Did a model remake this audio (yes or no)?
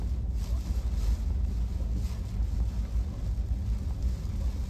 no